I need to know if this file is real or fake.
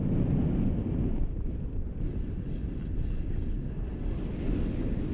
real